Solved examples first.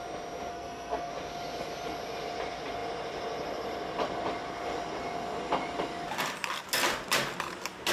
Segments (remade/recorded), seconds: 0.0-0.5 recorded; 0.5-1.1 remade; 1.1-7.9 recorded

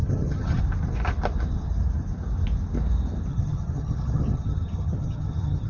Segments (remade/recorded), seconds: 0.0-0.6 remade; 0.6-3.3 recorded; 3.3-5.7 remade

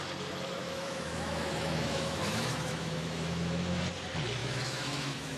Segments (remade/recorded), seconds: 0.0-0.6 recorded; 0.6-3.8 remade; 3.8-4.4 recorded; 4.4-5.4 remade

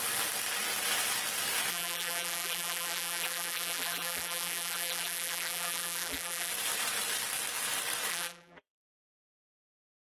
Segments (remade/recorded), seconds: 0.0-1.7 recorded; 1.7-6.5 remade; 6.5-8.1 recorded; 8.1-8.9 remade; 8.9-10.2 recorded

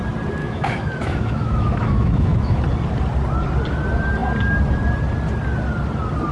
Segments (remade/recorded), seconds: 0.0-0.4 recorded; 0.4-2.6 remade; 2.6-6.3 recorded